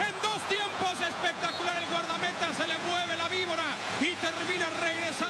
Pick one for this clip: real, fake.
fake